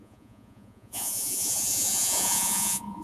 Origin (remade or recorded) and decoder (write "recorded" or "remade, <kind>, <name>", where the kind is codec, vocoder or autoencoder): remade, vocoder, Vocos